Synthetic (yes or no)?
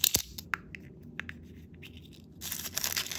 no